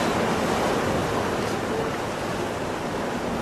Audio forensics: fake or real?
real